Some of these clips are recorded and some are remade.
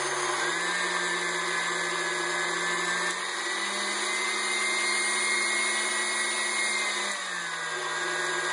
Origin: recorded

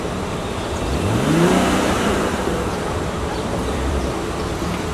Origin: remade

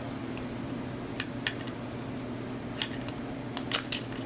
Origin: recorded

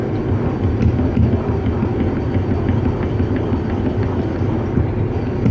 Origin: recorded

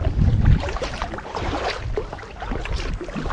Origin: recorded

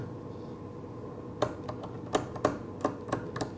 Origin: recorded